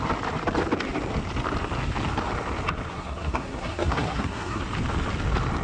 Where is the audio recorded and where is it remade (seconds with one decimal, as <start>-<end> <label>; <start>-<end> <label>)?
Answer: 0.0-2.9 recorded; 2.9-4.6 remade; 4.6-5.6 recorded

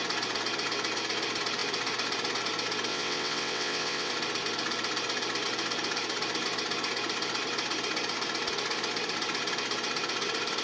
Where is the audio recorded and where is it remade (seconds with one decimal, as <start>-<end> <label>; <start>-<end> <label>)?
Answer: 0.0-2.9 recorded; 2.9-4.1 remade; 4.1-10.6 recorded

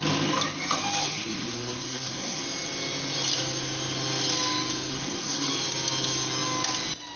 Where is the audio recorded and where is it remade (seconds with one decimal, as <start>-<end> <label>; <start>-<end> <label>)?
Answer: 0.0-1.0 recorded; 1.0-2.4 remade; 2.4-4.9 recorded; 4.9-5.5 remade; 5.5-7.2 recorded